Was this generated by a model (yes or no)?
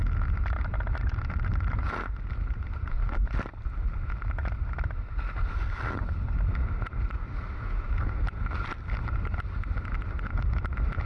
no